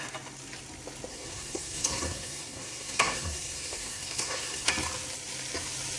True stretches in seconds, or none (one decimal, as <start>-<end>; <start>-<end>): 0.0-1.1; 4.7-6.0